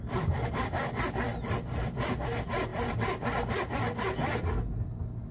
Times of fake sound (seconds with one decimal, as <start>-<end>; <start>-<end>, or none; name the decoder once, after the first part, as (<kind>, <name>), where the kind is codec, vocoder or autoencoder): none